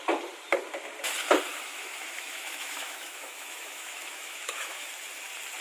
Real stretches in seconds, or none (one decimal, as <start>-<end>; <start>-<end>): 0.0-1.5; 4.9-5.6